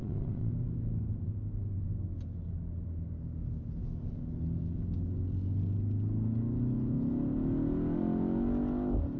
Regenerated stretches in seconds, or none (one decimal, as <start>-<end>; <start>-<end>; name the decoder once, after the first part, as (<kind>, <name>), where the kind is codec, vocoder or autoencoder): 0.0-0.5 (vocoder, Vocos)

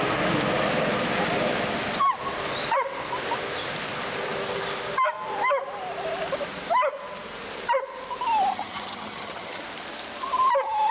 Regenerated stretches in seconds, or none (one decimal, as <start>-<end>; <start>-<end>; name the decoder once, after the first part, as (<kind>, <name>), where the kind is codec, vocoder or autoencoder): 8.5-9.6 (vocoder, HiFi-GAN)

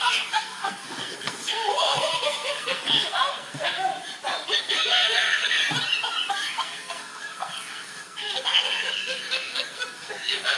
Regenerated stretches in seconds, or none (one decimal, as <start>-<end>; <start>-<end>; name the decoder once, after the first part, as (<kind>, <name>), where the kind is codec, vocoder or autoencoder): 0.0-3.9 (codec, SNAC); 4.6-5.6; 6.3-10.6